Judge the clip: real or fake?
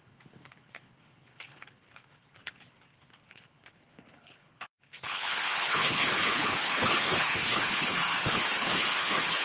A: fake